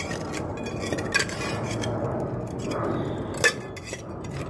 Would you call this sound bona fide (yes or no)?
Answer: yes